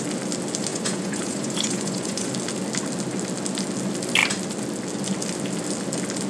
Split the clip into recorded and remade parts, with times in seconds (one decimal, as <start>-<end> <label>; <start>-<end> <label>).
0.0-0.7 recorded; 0.7-2.3 remade; 2.3-6.3 recorded